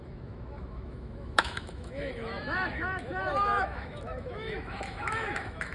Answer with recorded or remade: remade